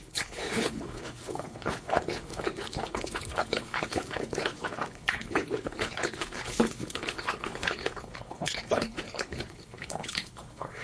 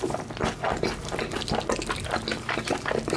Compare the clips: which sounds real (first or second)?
second